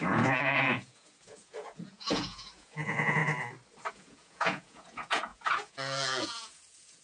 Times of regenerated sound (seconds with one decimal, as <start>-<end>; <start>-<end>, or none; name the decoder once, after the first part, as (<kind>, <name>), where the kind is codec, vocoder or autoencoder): 0.0-3.2 (vocoder, Vocos); 3.9-7.0